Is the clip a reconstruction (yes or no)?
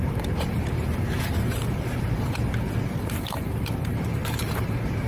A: yes